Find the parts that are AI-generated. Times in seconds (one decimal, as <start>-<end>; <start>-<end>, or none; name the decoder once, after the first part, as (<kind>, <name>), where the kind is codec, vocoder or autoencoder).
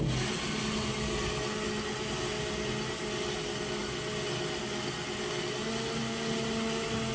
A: none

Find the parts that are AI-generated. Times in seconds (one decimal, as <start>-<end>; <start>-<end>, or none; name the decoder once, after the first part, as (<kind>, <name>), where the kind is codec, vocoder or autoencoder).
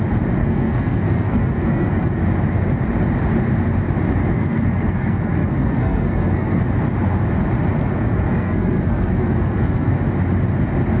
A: 0.4-2.2 (codec, SNAC); 4.2-6.6; 7.7-9.9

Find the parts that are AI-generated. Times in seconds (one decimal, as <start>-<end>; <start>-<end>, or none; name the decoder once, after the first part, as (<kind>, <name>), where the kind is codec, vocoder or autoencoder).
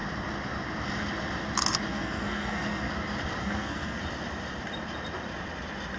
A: 1.9-2.9 (codec, SNAC); 3.4-4.0